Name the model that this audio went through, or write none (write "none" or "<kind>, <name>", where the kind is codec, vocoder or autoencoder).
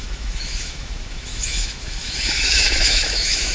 autoencoder, DAC-VAE